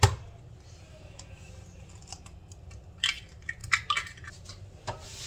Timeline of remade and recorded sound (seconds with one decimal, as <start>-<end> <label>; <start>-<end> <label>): 0.0-0.9 recorded; 0.9-1.5 remade; 1.5-5.3 recorded